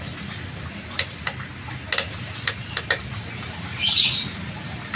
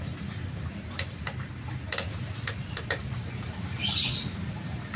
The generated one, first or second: second